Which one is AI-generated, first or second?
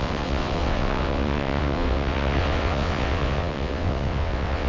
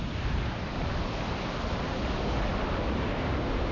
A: first